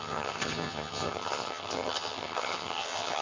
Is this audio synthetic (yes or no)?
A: yes